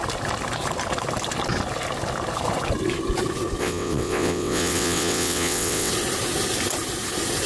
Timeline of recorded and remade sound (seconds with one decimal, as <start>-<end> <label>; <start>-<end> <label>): 0.0-3.6 recorded; 3.6-5.9 remade; 5.9-7.5 recorded

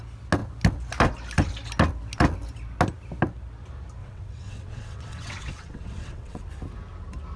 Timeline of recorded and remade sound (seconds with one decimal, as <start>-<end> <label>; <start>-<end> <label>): 0.0-4.0 recorded; 4.0-6.4 remade; 6.4-7.4 recorded

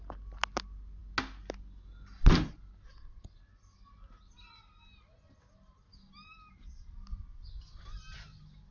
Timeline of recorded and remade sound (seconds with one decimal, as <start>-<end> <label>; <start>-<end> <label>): 0.0-8.7 recorded